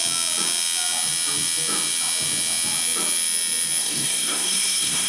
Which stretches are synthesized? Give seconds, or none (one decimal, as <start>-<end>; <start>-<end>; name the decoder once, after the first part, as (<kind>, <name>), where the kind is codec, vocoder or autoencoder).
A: 3.8-5.1 (codec, SNAC)